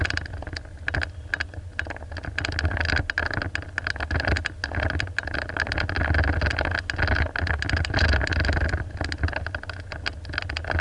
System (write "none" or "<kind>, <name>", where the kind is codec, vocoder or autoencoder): none